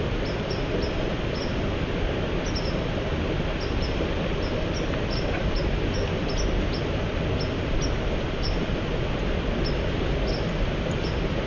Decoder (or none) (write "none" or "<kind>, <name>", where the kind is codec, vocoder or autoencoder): none